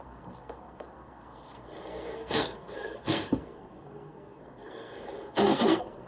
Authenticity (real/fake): fake